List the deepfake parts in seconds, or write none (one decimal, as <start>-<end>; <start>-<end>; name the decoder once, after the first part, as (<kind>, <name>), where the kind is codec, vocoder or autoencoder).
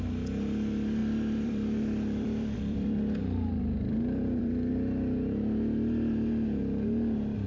1.0-4.7 (vocoder, BigVGAN v2)